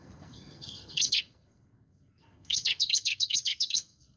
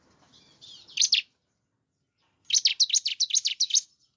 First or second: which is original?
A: second